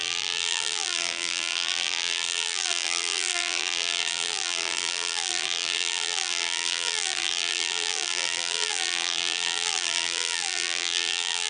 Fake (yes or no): yes